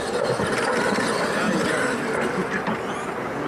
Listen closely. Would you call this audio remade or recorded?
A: recorded